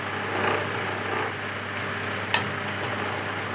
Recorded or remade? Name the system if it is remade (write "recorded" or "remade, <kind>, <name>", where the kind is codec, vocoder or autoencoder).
recorded